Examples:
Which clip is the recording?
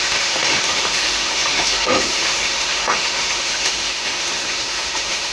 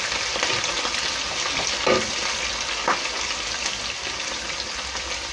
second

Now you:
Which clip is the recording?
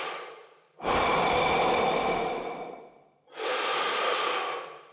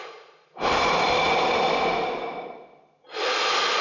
second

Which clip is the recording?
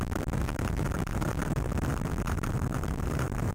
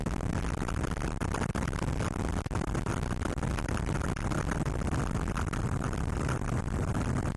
second